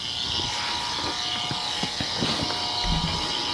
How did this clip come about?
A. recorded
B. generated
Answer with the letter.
A